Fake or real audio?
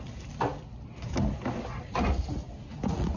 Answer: real